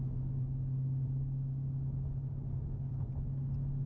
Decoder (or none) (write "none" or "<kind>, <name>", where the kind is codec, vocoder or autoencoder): none